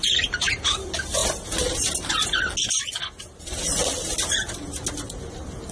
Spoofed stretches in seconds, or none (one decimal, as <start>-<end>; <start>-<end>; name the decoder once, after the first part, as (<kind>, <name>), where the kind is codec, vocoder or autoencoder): none